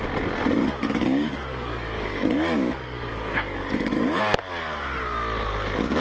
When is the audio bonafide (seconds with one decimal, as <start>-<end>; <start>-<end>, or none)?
0.0-0.6; 4.2-6.0